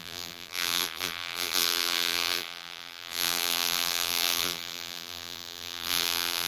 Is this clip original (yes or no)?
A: no